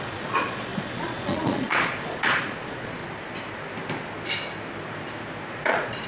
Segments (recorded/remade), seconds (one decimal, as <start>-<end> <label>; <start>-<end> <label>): 0.0-3.0 remade; 3.0-5.5 recorded; 5.5-6.1 remade